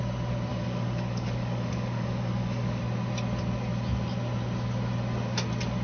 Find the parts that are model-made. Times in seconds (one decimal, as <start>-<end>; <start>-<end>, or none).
0.5-2.8